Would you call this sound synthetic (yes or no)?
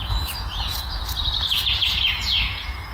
yes